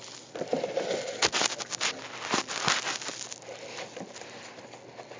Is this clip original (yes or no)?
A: yes